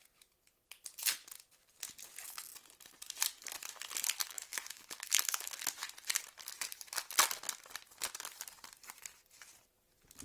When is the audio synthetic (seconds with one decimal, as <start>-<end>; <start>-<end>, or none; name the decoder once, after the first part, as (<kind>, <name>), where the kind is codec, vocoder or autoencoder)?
4.2-5.6 (autoencoder, DAC-VAE)